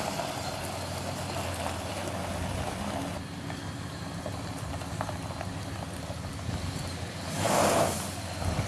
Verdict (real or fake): real